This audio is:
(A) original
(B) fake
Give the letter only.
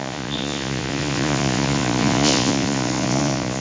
B